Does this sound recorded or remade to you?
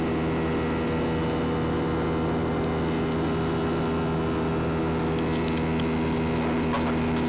recorded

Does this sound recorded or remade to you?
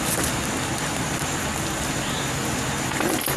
recorded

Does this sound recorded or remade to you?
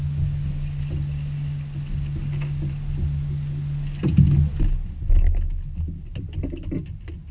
recorded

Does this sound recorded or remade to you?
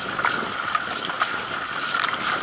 recorded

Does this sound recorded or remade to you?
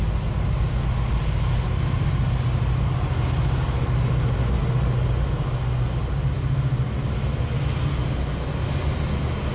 recorded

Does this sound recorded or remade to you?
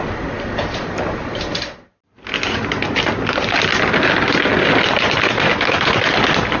recorded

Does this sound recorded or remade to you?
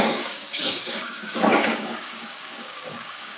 remade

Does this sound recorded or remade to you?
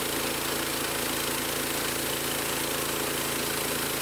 recorded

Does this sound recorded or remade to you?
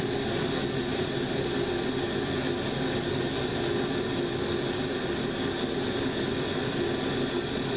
recorded